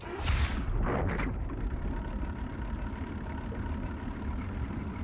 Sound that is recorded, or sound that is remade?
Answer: recorded